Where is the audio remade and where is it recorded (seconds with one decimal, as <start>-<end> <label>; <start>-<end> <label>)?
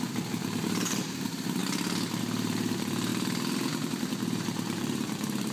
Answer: 0.0-1.6 remade; 1.6-2.2 recorded; 2.2-5.5 remade